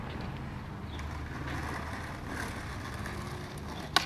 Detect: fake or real real